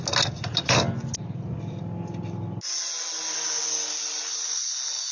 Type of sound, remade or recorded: recorded